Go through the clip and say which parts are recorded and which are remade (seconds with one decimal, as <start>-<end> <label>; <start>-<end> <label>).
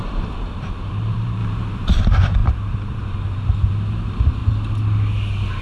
0.0-4.4 remade; 4.4-5.6 recorded